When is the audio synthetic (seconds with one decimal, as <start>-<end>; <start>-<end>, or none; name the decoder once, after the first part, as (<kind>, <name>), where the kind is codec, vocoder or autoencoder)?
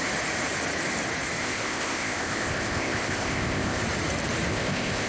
1.4-3.8 (codec, ZipCodec); 4.5-5.1